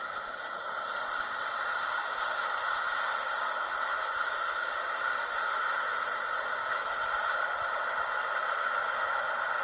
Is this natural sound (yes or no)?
no